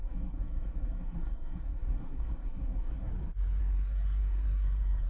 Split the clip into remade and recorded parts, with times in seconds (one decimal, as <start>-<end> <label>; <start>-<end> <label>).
0.0-3.1 remade; 3.1-3.6 recorded; 3.6-5.1 remade